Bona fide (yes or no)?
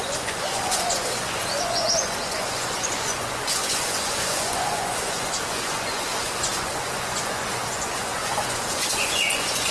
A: no